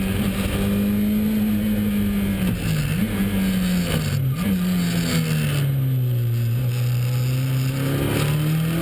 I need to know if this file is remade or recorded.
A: recorded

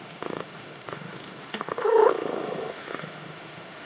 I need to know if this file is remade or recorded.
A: remade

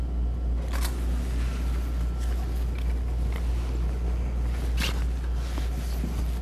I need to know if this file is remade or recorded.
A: recorded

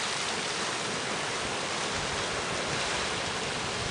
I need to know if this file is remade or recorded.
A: recorded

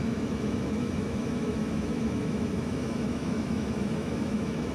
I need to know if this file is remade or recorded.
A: remade